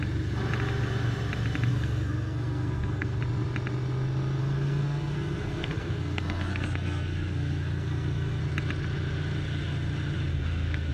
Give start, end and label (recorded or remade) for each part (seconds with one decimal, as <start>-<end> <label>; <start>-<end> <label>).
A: 0.0-1.7 recorded; 1.7-3.2 remade; 3.2-4.4 recorded; 4.4-8.4 remade; 8.4-10.3 recorded; 10.3-10.9 remade